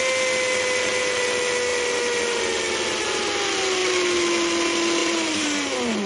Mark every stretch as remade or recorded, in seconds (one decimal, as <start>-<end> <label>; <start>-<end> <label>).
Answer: 0.0-5.0 recorded; 5.0-6.1 remade